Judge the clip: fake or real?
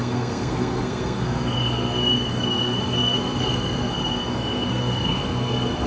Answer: fake